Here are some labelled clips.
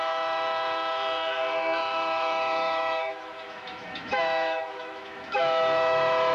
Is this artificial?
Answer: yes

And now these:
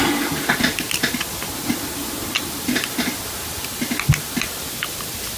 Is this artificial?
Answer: no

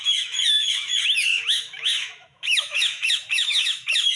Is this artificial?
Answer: yes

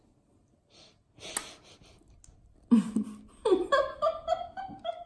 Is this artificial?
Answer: no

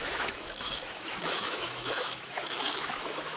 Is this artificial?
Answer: yes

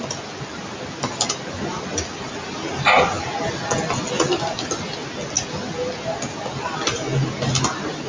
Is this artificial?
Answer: no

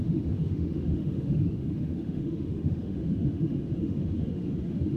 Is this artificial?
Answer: yes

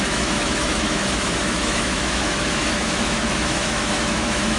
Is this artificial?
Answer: yes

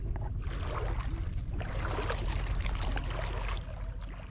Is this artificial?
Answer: no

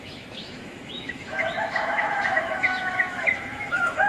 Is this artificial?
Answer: yes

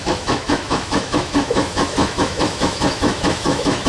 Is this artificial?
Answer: yes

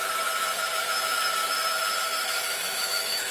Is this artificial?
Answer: yes